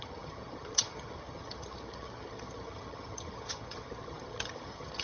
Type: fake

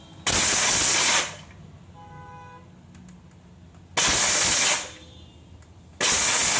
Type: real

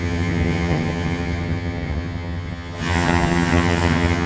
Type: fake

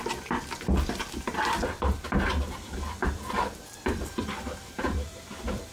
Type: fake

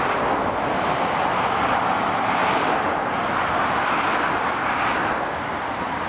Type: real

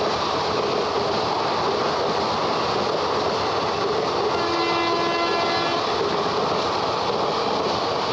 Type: real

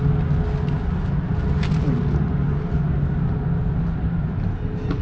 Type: real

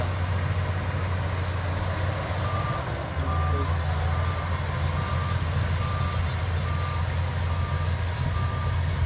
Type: real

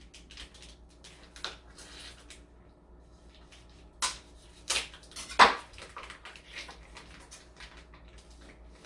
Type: real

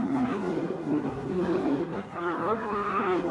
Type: fake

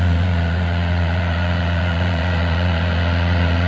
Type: fake